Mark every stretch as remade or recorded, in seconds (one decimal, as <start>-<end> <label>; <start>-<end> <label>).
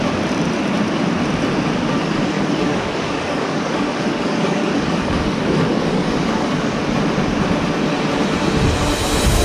0.0-2.0 recorded; 2.0-6.8 remade; 6.8-9.4 recorded